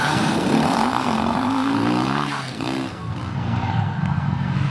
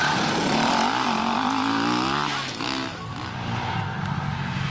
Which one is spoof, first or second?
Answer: first